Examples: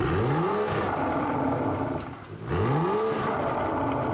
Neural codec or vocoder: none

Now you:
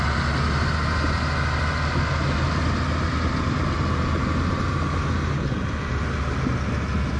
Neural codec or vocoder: none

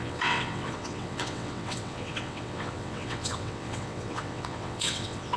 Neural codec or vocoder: vocoder, WaveNeXt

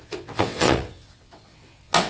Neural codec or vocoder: vocoder, WaveNeXt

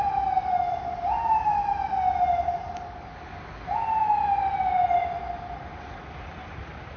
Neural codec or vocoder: none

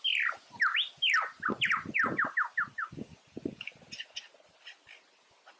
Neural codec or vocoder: none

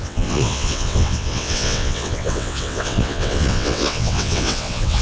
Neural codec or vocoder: vocoder, WaveNeXt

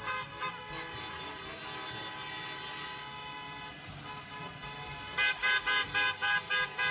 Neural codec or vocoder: none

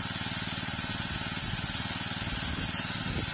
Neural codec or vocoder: none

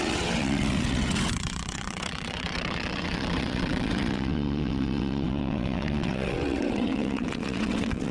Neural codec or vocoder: vocoder, WaveNeXt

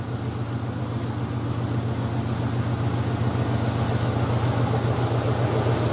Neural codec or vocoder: none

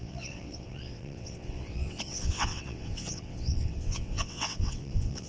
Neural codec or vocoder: vocoder, WaveNeXt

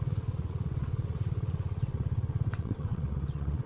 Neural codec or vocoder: vocoder, WaveNeXt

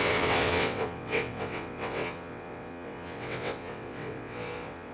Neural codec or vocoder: vocoder, WaveNeXt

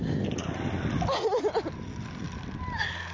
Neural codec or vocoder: none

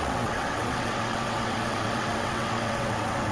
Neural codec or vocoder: vocoder, WaveNeXt